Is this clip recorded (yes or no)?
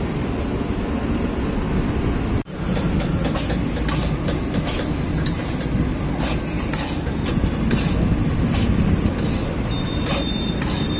yes